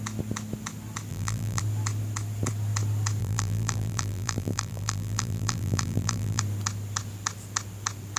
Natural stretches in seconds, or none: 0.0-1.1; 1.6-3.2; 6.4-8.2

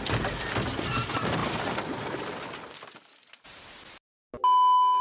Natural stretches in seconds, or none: 0.0-5.0